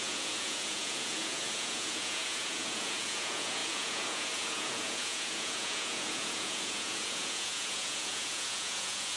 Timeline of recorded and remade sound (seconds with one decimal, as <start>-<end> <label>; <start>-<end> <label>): 0.0-9.2 remade